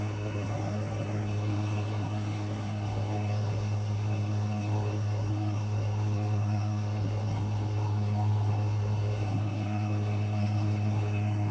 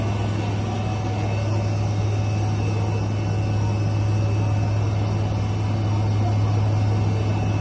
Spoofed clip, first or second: first